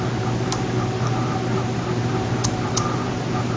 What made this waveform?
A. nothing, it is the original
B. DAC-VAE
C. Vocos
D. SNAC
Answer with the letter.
A